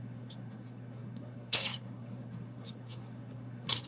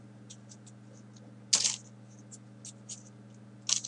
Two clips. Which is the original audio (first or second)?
second